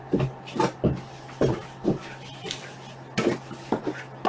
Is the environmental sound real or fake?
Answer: real